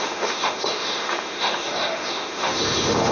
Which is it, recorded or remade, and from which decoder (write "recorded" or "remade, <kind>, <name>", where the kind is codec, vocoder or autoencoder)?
remade, autoencoder, DAC-VAE